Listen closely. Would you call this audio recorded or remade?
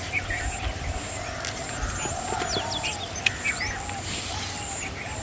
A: recorded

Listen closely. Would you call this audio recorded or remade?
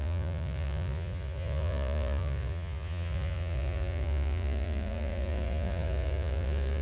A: remade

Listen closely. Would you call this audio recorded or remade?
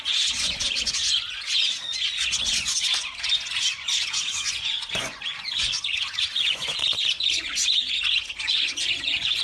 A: remade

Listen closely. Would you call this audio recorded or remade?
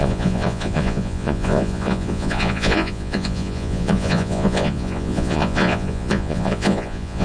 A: remade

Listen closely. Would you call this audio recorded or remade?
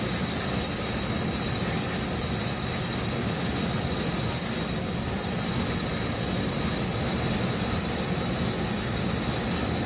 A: recorded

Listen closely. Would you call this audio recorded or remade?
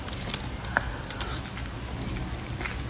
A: recorded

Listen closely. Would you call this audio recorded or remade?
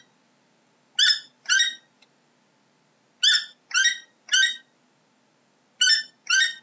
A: recorded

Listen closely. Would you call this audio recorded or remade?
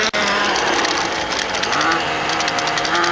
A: recorded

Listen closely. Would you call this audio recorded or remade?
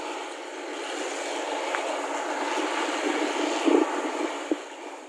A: recorded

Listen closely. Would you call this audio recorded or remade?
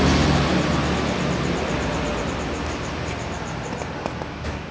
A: recorded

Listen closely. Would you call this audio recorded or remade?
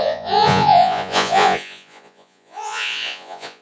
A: remade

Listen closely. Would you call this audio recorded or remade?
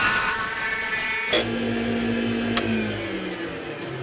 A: recorded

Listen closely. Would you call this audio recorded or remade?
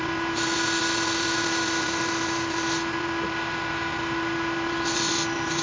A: recorded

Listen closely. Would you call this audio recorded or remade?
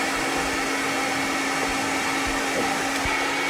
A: recorded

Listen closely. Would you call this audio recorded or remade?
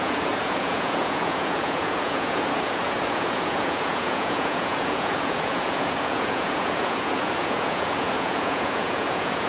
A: remade